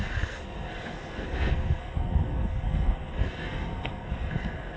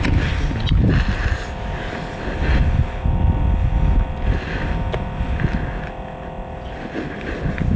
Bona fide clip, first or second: second